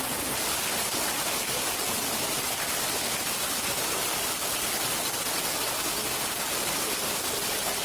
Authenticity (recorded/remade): recorded